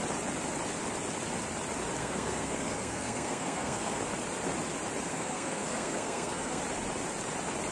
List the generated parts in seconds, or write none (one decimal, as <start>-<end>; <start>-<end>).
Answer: 2.0-4.0; 5.1-6.6